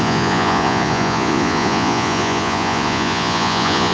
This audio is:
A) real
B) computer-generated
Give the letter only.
B